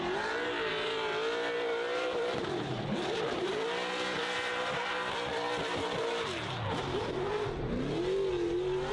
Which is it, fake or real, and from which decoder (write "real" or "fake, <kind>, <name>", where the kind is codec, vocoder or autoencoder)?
real